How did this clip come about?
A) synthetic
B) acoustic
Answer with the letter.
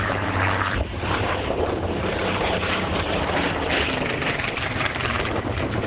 A